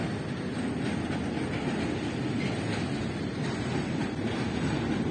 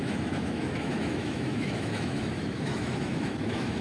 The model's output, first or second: second